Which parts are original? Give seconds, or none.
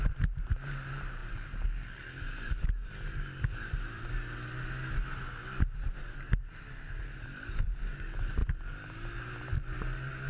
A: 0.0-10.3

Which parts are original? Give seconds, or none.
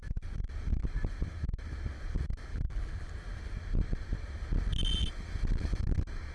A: 0.0-2.5; 3.1-6.3